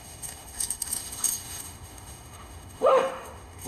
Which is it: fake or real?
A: fake